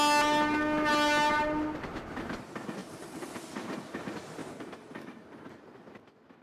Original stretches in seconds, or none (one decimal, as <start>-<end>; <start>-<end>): 0.0-2.8; 3.4-4.4; 5.5-6.4